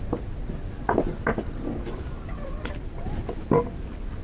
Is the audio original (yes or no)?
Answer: yes